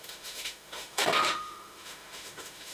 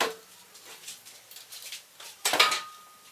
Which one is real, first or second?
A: second